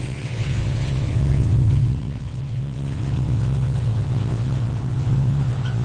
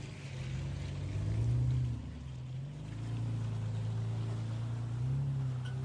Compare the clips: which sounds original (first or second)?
second